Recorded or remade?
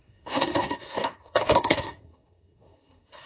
remade